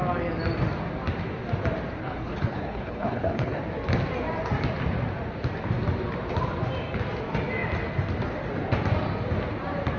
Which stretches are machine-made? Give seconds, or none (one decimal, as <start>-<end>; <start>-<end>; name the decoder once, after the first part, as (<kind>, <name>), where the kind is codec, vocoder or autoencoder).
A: 2.0-3.6 (codec, HILCodec)